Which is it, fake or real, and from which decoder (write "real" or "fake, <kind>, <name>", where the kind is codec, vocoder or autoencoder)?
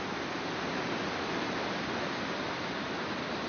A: real